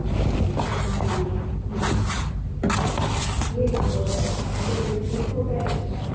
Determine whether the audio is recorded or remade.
recorded